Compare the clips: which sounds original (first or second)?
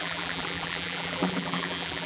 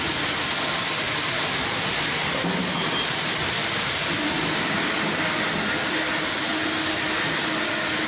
second